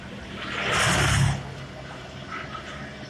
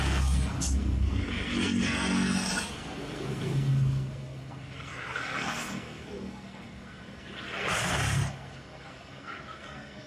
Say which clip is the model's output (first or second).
second